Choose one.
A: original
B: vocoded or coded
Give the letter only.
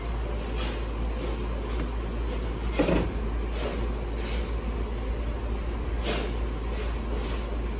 A